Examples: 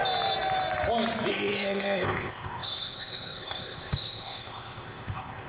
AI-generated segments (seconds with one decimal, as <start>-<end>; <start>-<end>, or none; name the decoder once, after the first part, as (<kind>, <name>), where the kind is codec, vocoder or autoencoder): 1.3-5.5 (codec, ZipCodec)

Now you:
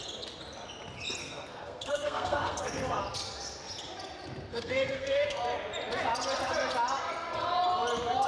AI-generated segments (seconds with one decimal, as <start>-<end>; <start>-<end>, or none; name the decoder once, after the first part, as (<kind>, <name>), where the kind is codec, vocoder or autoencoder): 1.2-3.0 (codec, SNAC); 4.5-5.4

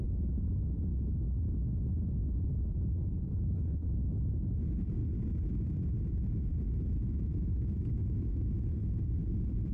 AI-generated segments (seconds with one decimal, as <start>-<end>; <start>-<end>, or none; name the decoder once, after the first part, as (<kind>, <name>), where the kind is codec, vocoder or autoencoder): 0.0-0.9 (vocoder, Vocos); 1.8-5.0; 6.1-9.7

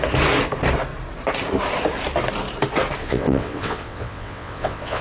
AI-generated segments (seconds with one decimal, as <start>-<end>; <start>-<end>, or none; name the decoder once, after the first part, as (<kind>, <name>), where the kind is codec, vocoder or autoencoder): 3.0-5.0 (vocoder, WaveNeXt)

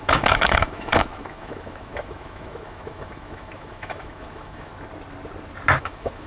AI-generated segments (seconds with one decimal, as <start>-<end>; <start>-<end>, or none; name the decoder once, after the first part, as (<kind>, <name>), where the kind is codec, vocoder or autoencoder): 0.0-4.7 (autoencoder, DAC-VAE); 5.8-6.3

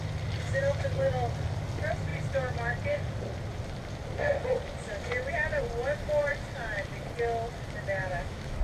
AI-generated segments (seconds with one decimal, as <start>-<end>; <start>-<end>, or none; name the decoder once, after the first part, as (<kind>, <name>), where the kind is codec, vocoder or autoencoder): 8.0-8.6 (autoencoder, DAC-VAE)

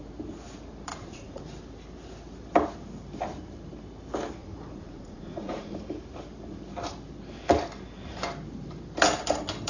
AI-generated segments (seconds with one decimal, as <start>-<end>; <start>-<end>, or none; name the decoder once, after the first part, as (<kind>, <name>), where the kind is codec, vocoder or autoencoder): 0.9-1.4 (vocoder, Vocos); 4.4-5.7

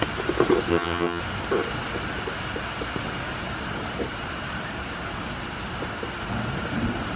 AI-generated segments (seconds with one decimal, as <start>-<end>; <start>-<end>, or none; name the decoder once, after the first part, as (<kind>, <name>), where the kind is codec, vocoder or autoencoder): 0.7-1.2 (vocoder, HiFi-GAN)